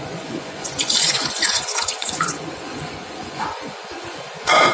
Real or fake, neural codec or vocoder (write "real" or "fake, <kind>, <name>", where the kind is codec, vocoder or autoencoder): fake, vocoder, Vocos